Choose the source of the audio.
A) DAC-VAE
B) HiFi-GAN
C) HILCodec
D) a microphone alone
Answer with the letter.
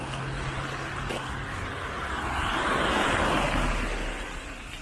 D